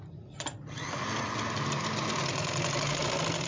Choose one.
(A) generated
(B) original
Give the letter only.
B